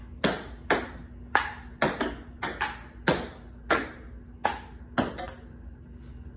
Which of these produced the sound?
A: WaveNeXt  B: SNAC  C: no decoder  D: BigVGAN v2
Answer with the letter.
C